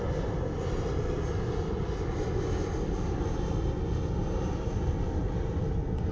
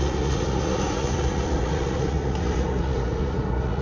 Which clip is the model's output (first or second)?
second